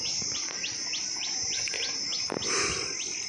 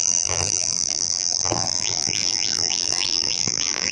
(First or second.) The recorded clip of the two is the first